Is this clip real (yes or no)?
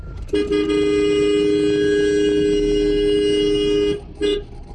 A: yes